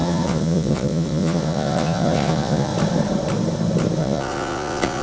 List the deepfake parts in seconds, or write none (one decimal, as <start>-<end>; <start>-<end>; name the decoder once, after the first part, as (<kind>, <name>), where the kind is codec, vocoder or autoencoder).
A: 0.0-2.7 (vocoder, Vocos); 4.0-5.0